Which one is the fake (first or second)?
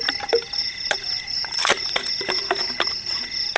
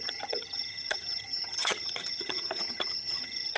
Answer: second